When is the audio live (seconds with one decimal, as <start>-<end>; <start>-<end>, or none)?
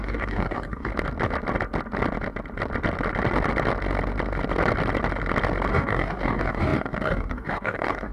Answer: 0.9-5.7